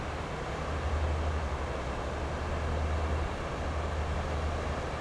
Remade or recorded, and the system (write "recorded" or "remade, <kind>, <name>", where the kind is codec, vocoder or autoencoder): recorded